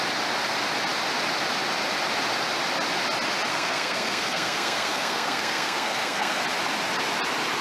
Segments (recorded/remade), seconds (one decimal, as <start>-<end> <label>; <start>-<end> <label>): 0.0-3.5 recorded; 3.5-6.4 remade; 6.4-7.6 recorded